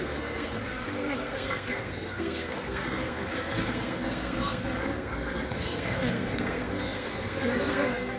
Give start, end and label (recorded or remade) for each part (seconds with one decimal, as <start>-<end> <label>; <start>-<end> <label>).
0.0-8.2 remade